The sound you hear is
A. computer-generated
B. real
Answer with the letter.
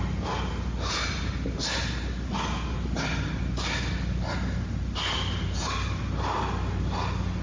B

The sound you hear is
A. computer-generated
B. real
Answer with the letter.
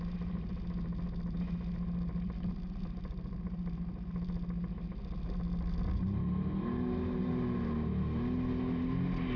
B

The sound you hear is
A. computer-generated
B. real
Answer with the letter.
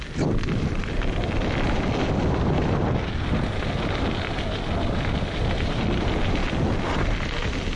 B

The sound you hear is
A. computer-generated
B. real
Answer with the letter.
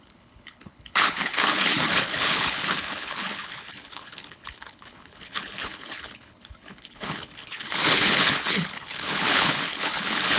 A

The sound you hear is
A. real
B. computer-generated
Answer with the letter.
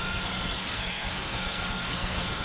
B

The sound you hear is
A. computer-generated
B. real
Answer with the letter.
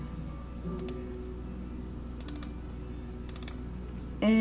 B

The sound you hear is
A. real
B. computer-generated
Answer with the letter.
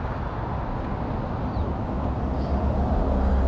A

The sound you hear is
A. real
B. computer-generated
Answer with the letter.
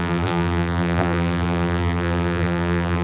B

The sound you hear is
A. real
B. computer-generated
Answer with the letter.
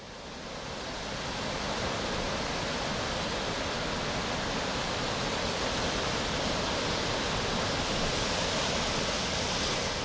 A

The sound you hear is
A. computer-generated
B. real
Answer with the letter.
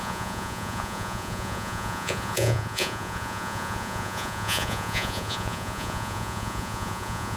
A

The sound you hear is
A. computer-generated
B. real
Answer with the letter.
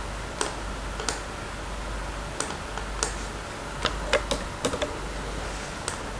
B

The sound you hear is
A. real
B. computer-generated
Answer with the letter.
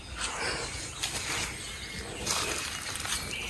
A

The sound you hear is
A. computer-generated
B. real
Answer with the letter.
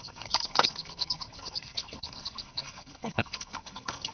A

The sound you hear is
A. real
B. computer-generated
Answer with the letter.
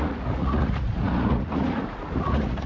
B